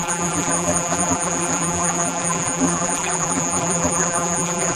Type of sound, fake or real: fake